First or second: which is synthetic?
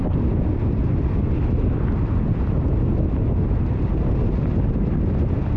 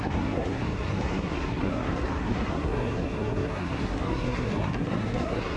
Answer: second